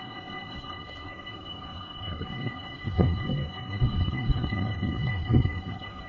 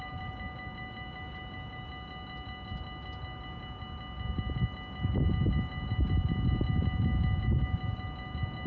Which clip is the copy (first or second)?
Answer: first